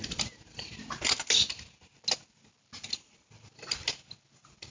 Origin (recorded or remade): recorded